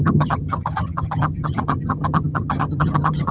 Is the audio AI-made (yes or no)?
yes